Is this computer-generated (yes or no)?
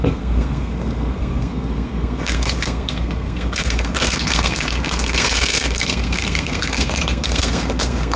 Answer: yes